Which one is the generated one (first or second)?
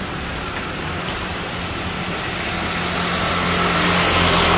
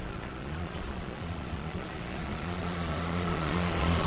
second